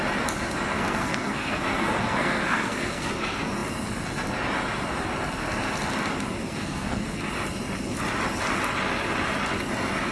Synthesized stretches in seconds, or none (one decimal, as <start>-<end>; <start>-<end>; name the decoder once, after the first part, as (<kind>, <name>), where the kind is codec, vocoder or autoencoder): 0.7-3.1 (codec, SNAC); 6.4-7.2